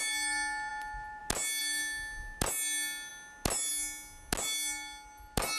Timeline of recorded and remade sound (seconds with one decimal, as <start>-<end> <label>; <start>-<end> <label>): 0.0-5.6 recorded